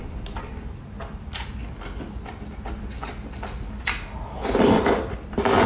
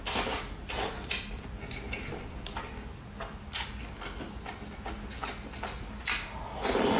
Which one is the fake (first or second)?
first